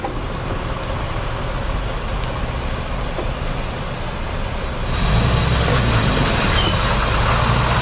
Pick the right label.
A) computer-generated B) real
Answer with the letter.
B